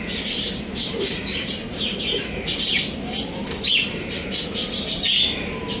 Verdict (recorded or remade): recorded